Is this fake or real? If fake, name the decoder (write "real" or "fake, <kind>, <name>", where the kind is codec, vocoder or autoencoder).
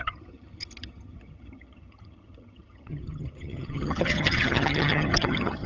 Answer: fake, vocoder, HiFi-GAN